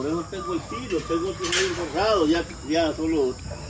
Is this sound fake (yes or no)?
no